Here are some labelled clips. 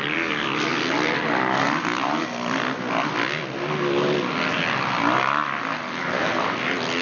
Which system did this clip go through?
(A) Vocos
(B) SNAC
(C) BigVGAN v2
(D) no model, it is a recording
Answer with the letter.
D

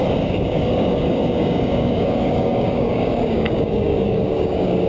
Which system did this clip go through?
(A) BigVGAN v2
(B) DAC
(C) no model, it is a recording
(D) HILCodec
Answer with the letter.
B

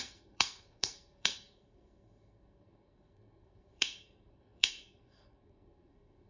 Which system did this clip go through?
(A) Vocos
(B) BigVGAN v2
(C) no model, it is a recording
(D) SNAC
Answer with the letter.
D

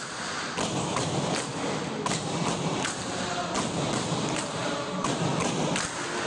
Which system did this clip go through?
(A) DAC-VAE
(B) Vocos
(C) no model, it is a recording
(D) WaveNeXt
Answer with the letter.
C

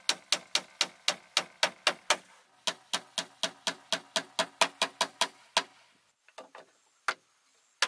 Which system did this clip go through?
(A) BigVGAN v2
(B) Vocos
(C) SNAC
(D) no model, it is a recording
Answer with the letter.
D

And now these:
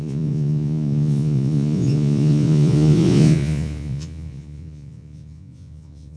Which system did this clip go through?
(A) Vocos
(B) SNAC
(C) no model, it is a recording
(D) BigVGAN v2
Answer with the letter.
A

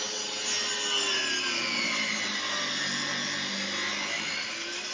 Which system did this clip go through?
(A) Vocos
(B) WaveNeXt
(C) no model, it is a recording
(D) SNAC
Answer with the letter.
C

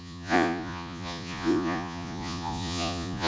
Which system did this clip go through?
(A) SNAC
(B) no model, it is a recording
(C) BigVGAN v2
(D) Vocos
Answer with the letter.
D